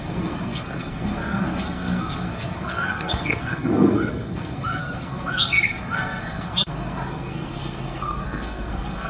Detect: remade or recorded remade